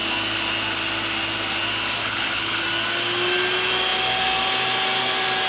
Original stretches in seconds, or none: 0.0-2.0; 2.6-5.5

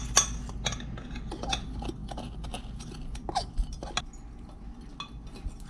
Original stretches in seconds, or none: 0.0-5.7

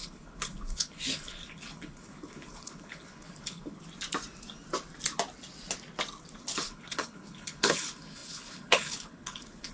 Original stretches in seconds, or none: 3.8-6.4

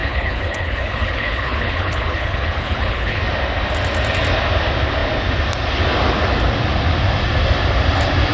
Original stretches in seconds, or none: 3.2-8.3

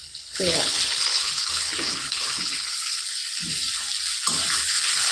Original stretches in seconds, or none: 3.2-4.5